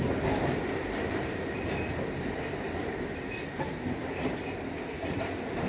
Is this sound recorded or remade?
recorded